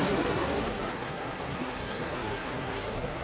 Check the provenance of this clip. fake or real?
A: fake